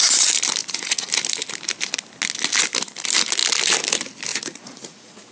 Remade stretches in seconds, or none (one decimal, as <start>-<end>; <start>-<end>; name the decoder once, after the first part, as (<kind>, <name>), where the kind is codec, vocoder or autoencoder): 0.6-1.1 (vocoder, Vocos); 4.3-5.3